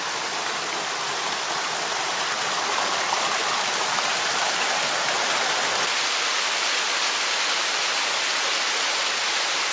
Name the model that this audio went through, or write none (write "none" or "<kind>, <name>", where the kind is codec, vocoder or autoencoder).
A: none